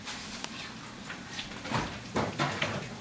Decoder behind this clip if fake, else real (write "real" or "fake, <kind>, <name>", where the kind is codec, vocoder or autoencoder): real